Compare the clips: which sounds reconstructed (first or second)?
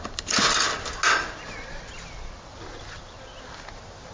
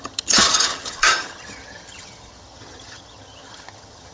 second